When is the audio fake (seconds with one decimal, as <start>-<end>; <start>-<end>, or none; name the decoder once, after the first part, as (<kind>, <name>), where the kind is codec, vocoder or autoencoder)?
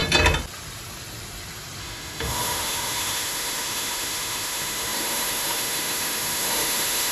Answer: 1.8-7.1 (autoencoder, DAC-VAE)